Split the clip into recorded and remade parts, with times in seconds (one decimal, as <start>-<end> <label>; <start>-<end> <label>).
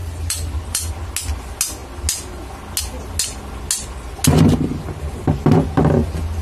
0.0-0.9 remade; 0.9-6.4 recorded